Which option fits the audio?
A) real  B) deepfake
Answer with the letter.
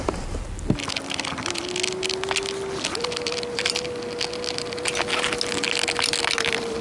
A